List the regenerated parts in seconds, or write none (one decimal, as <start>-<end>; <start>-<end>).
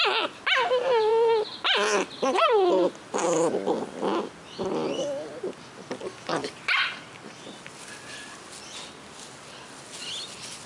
none